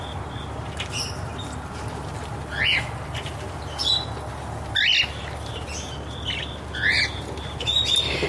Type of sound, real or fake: real